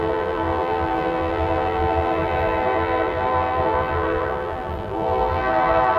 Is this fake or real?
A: fake